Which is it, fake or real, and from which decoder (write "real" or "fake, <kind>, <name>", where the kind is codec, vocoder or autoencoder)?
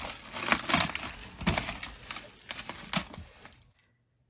real